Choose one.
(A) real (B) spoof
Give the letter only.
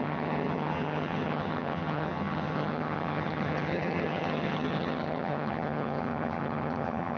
B